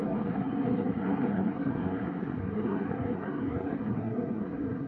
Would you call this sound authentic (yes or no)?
no